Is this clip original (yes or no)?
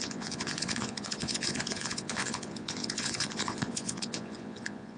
no